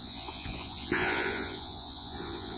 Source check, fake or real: fake